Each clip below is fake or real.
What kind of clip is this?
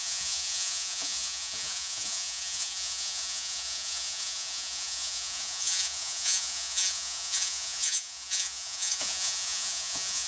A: fake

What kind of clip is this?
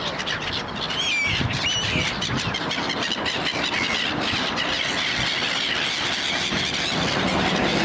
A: real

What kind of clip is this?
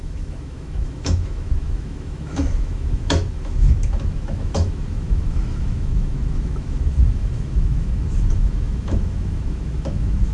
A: fake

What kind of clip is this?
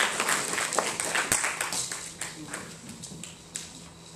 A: real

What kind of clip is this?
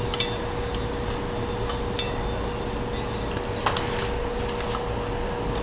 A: real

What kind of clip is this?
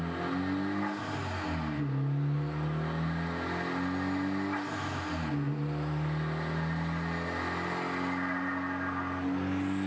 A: real